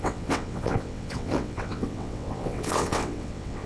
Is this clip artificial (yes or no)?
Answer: yes